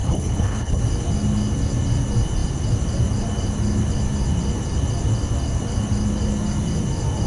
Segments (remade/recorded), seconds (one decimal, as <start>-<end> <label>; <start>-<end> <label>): 0.0-0.8 remade; 0.8-7.3 recorded